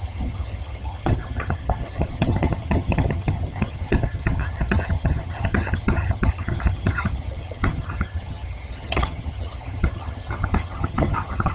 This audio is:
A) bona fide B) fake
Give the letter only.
B